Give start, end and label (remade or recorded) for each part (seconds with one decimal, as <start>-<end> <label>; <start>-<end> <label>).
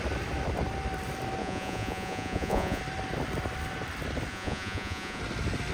0.0-1.4 recorded; 1.4-2.8 remade; 2.8-4.3 recorded; 4.3-5.2 remade; 5.2-5.7 recorded